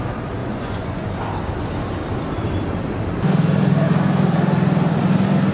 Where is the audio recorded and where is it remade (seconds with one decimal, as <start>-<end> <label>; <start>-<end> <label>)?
0.0-0.4 recorded; 0.4-1.1 remade; 1.1-5.5 recorded

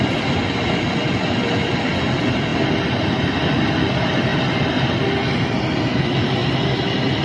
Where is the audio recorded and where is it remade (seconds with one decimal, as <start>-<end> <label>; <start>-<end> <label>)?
0.0-7.2 recorded

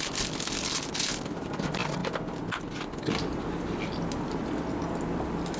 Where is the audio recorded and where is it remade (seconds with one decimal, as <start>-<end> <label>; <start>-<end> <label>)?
0.0-5.6 recorded